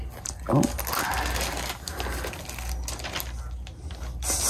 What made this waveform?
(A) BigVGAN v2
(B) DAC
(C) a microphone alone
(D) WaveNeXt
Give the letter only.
C